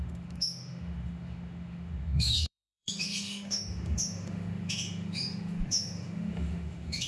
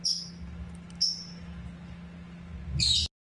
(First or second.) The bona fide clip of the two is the second